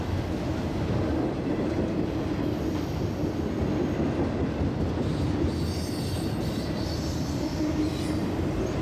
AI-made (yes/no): no